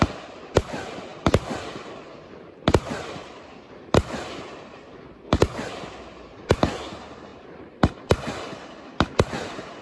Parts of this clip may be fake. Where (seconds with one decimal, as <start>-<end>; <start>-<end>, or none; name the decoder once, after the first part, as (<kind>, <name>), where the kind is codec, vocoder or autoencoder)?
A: none